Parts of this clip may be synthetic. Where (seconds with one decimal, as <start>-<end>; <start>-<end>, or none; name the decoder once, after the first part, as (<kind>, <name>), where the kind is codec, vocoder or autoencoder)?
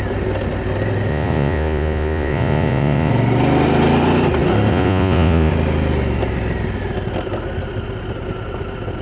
1.1-3.1 (vocoder, Vocos); 4.7-5.5